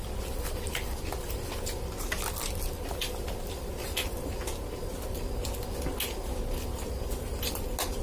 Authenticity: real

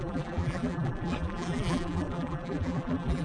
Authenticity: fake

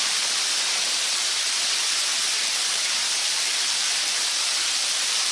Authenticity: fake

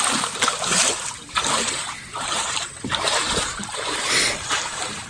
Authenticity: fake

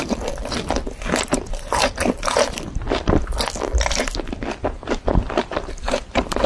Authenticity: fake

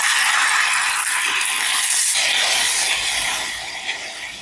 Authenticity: real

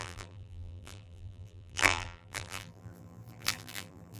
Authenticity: fake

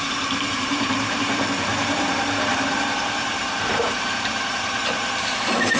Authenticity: fake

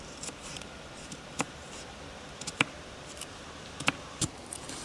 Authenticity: fake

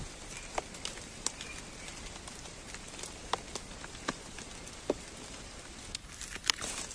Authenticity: fake